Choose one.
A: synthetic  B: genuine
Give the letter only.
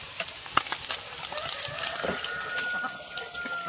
B